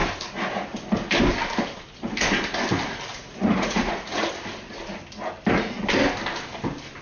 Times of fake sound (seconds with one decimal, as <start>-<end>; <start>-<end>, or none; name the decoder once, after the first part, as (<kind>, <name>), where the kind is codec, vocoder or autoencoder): 3.1-4.3 (vocoder, Vocos)